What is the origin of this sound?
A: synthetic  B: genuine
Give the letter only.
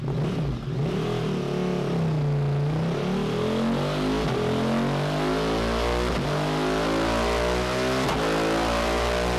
B